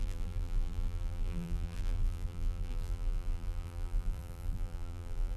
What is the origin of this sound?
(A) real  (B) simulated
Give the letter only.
B